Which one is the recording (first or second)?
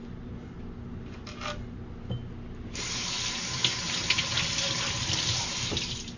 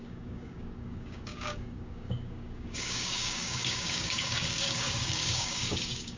first